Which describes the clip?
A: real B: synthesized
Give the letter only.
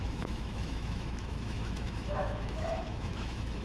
B